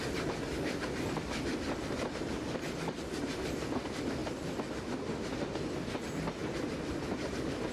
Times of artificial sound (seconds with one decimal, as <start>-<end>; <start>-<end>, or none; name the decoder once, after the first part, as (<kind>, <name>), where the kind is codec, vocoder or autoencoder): none